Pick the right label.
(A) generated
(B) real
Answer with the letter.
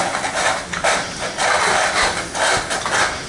B